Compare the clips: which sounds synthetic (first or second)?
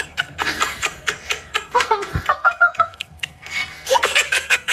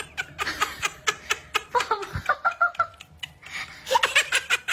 first